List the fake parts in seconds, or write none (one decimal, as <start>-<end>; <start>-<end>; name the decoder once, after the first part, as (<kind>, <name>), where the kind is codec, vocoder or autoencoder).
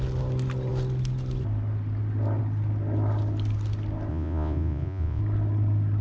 4.1-5.2 (vocoder, Vocos)